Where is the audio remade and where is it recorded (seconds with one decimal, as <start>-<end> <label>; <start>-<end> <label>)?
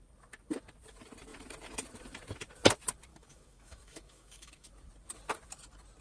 0.0-3.1 recorded; 3.1-4.7 remade; 4.7-6.0 recorded